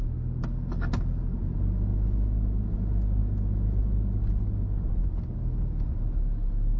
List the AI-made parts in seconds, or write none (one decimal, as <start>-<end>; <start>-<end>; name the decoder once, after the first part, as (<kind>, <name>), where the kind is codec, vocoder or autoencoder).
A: none